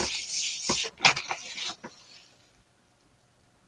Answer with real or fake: real